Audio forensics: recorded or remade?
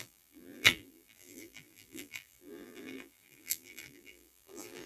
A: remade